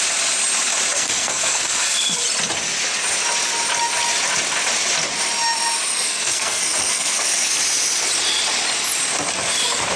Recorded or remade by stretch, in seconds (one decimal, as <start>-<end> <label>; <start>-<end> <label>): 0.0-0.9 recorded; 0.9-2.2 remade; 2.2-5.9 recorded; 5.9-7.5 remade; 7.5-10.0 recorded